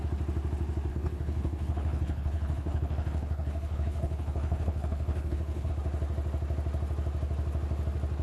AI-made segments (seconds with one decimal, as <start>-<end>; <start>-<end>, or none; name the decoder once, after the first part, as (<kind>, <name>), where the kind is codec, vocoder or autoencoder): 0.9-5.7 (codec, HILCodec)